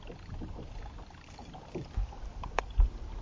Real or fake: real